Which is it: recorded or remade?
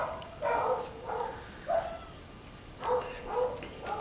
recorded